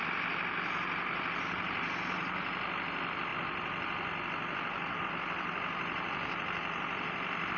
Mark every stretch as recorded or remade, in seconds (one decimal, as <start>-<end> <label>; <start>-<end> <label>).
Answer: 0.0-7.6 recorded